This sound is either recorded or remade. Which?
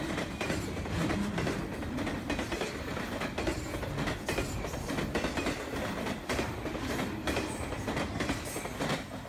recorded